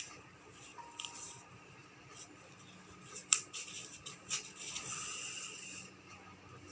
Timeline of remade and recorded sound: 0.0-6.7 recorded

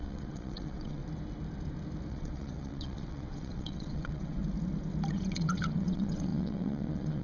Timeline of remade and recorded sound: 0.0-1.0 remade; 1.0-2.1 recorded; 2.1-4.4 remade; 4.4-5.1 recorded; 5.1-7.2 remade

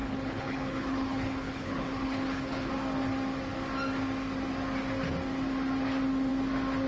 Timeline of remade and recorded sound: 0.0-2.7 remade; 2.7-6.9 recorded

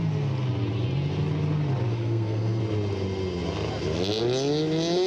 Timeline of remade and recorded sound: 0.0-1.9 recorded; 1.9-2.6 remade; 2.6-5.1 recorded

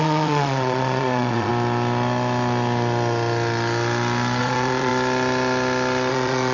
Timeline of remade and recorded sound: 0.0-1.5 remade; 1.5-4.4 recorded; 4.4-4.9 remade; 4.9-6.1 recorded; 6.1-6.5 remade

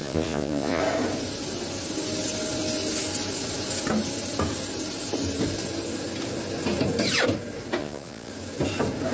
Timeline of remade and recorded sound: 0.0-0.8 remade; 0.8-7.8 recorded; 7.8-8.3 remade; 8.3-9.1 recorded

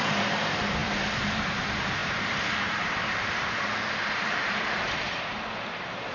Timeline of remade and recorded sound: 0.0-6.1 remade